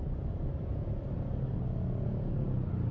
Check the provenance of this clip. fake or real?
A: real